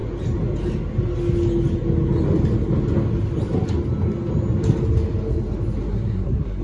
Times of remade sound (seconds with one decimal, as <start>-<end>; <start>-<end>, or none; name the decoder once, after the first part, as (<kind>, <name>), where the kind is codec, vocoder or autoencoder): 5.9-6.6 (codec, SNAC)